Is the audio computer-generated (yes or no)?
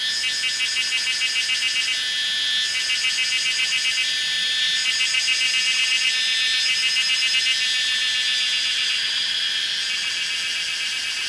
no